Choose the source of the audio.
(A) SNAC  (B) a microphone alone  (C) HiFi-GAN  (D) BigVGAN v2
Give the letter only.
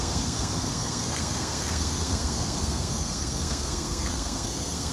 A